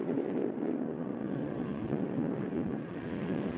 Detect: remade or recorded remade